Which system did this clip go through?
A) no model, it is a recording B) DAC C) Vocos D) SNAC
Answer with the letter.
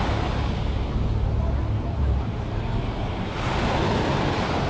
A